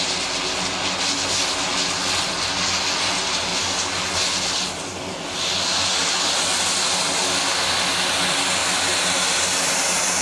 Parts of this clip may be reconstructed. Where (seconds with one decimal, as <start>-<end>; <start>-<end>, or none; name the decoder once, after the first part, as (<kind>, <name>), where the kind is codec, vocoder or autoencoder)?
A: none